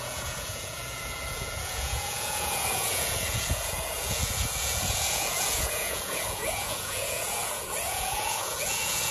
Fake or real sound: fake